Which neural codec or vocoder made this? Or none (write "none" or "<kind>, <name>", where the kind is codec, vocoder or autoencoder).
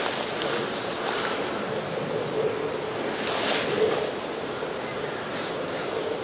none